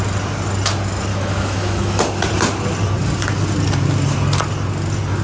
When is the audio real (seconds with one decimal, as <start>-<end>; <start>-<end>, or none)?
0.0-1.1; 2.0-5.2